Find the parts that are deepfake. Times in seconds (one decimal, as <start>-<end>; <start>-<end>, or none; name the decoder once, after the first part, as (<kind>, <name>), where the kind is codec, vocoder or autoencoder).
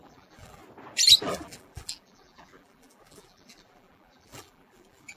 0.0-0.6 (vocoder, BigVGAN v2); 1.2-5.2